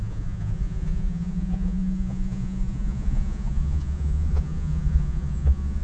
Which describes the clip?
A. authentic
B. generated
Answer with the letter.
B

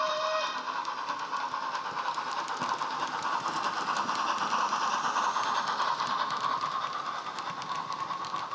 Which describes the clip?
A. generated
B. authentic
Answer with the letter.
B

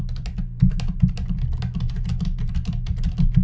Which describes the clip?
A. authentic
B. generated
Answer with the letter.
A